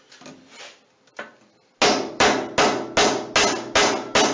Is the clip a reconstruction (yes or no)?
no